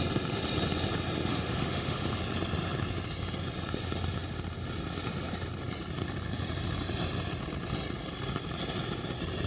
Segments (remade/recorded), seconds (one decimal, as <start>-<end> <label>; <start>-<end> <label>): 0.0-1.3 recorded; 1.3-2.1 remade; 2.1-9.5 recorded